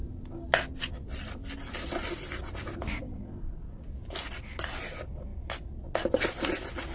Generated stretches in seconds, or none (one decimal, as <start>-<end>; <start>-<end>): none